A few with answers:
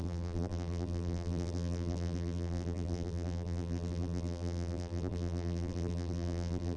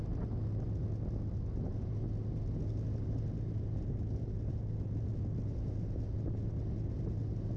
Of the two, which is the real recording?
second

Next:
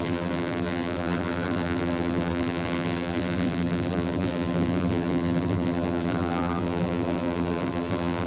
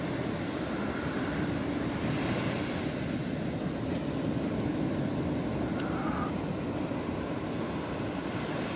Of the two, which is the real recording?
second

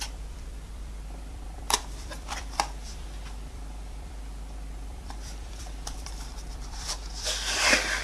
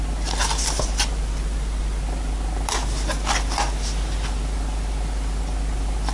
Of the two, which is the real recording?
second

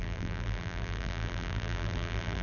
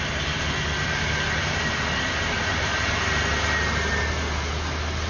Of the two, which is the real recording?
second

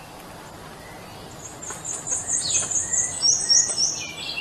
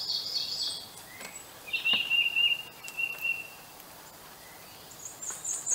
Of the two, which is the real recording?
first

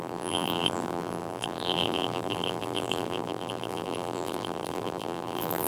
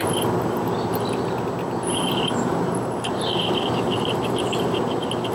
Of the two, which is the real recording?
second